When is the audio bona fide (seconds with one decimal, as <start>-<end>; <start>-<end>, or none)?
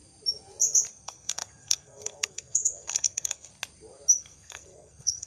0.0-0.9; 3.5-4.2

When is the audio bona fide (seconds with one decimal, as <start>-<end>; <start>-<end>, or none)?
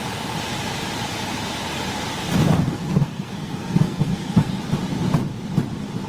0.0-2.6; 4.6-6.1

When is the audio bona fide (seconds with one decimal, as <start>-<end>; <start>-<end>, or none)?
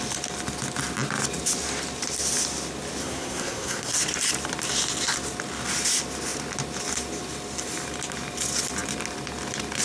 0.0-3.0; 4.0-9.8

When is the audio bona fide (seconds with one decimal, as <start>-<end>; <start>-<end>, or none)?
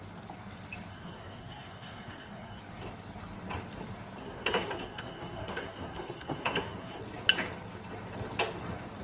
0.0-0.9; 2.6-4.2; 7.0-9.0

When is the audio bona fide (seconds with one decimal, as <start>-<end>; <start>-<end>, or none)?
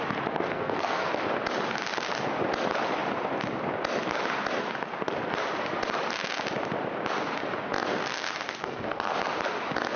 0.0-0.5; 1.1-8.6; 9.1-10.0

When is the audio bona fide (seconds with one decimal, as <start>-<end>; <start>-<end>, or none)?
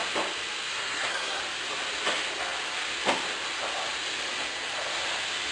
0.0-0.7; 1.4-5.5